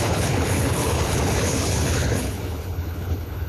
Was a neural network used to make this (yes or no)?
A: yes